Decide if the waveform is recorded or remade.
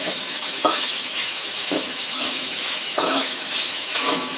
remade